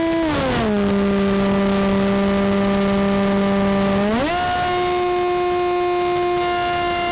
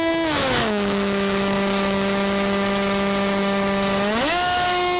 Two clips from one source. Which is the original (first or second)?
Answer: first